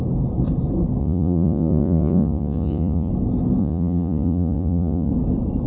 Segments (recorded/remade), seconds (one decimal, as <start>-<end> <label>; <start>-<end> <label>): 0.0-1.0 recorded; 1.0-3.1 remade; 3.1-3.6 recorded; 3.6-5.1 remade; 5.1-5.7 recorded